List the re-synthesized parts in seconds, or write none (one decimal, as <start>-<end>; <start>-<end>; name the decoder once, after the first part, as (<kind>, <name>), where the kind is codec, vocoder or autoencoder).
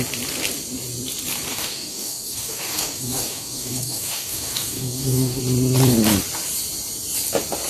1.5-5.4 (codec, DAC)